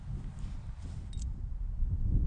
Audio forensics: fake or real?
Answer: real